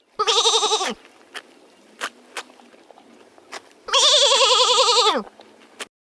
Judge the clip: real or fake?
real